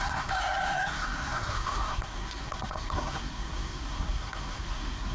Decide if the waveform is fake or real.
fake